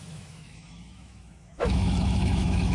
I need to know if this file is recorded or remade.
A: remade